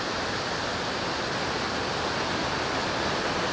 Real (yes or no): yes